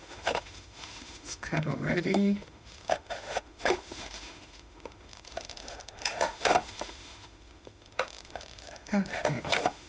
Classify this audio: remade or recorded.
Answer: remade